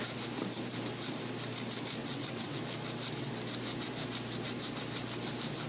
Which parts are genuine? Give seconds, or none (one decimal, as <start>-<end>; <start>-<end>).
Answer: 0.0-2.0; 2.6-5.7